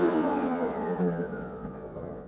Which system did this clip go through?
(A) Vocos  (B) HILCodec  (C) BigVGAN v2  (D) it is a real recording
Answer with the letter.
A